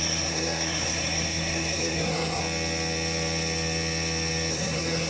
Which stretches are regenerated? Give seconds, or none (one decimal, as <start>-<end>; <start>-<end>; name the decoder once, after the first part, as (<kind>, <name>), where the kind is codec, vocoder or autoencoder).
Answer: 0.0-2.4 (codec, SNAC); 4.5-5.1